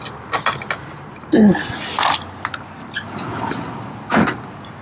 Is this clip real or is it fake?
real